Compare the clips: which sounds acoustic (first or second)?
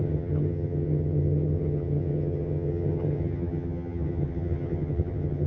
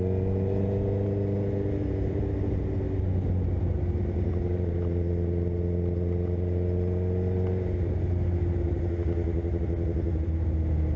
second